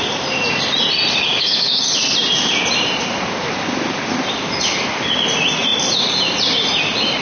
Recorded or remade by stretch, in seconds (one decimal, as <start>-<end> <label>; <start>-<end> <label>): 0.0-1.3 recorded; 1.3-1.9 remade; 1.9-7.2 recorded